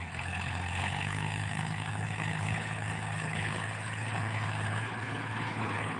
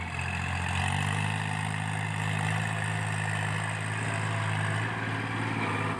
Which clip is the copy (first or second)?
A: first